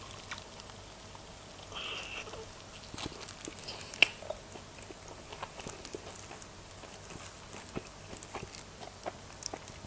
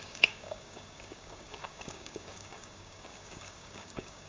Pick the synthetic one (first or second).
second